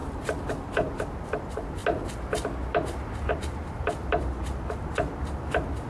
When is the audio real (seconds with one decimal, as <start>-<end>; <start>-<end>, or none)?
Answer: 0.0-0.5; 1.8-3.3